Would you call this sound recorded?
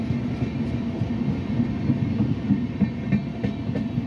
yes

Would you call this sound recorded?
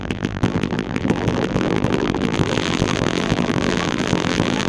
no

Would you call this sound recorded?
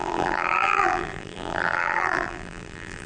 no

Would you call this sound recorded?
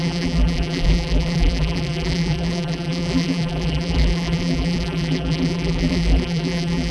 no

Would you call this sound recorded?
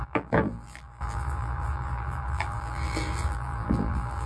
no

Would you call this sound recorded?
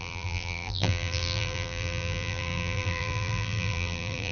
no